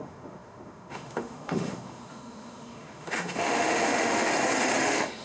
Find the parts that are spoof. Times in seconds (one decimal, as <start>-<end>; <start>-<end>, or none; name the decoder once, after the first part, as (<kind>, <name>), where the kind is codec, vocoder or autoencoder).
0.0-4.3 (autoencoder, DAC-VAE); 4.8-5.2